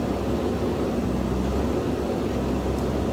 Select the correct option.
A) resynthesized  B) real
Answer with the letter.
B